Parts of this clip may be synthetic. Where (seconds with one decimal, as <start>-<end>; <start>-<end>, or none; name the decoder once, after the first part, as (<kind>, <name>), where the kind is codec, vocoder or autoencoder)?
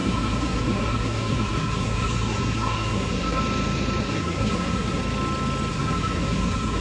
0.0-3.4 (codec, SNAC); 4.0-5.0; 5.7-6.8